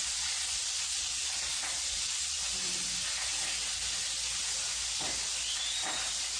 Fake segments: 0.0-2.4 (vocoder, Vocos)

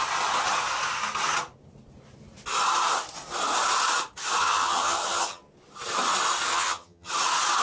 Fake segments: 4.4-5.4 (vocoder, HiFi-GAN); 6.5-7.1

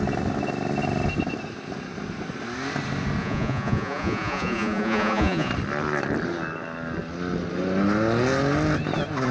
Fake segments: 3.2-5.5 (vocoder, Vocos)

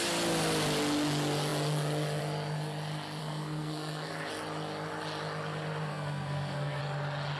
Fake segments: 3.2-4.3 (codec, SNAC); 5.9-6.8

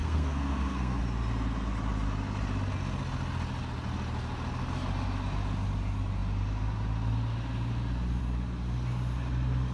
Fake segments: 0.0-1.0 (codec, SNAC)

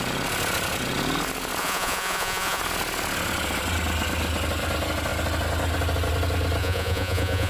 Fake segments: 1.6-2.6 (vocoder, Vocos); 6.6-7.5